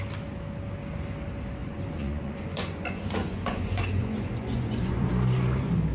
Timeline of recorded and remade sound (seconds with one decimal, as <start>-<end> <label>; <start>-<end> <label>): 0.0-1.6 recorded; 1.6-5.1 remade; 5.1-5.9 recorded